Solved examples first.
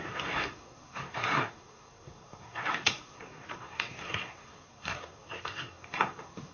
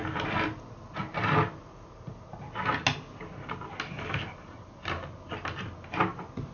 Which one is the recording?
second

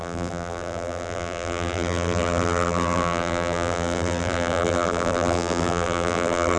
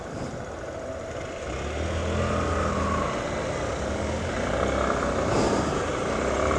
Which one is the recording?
second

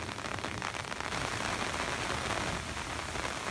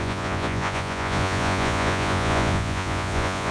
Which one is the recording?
first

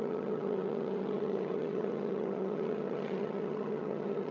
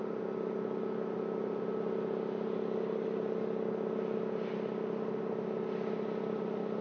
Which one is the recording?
second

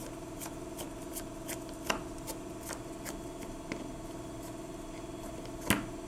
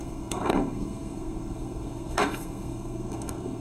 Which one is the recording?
first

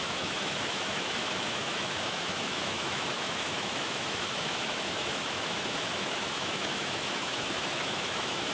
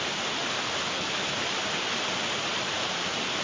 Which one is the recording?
second